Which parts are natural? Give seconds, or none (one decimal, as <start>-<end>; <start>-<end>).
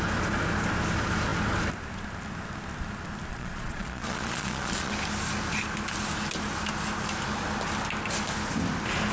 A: 0.0-3.3; 4.9-9.1